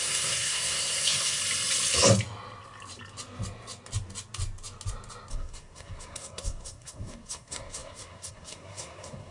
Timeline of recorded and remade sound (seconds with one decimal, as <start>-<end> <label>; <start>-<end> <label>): 0.0-1.4 remade; 1.4-5.3 recorded; 5.3-9.3 remade